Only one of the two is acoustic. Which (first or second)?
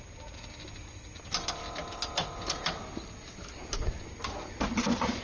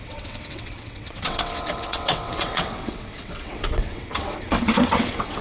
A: first